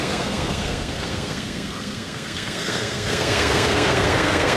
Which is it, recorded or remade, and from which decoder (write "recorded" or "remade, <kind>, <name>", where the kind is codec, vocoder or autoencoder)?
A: remade, codec, SNAC